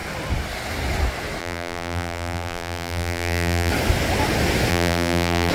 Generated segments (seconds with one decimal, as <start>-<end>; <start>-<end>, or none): 1.4-3.7; 4.7-5.5